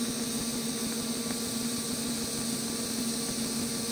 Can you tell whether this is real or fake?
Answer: real